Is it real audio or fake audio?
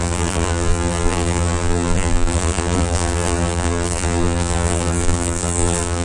fake